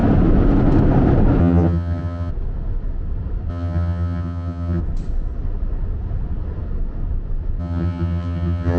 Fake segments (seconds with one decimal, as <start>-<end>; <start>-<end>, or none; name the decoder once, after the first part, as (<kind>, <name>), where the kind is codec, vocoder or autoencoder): 1.4-2.3 (vocoder, HiFi-GAN); 3.5-4.8; 7.6-8.8